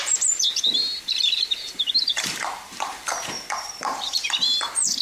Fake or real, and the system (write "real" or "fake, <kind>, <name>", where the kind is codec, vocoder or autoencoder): fake, vocoder, BigVGAN v2